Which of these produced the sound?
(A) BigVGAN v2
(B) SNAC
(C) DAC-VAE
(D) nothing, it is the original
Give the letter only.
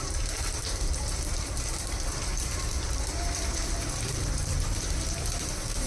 A